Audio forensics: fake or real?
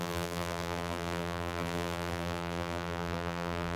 fake